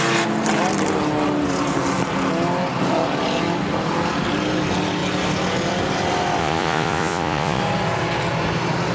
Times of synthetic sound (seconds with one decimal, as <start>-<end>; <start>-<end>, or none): 6.4-7.6